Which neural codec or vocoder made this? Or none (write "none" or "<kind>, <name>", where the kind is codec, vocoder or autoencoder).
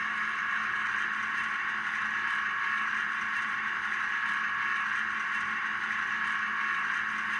vocoder, BigVGAN v2